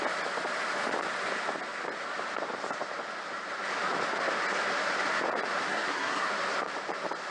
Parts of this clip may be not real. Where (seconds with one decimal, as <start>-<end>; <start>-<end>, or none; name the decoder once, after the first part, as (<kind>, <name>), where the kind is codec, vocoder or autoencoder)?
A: 5.7-6.3 (codec, SNAC)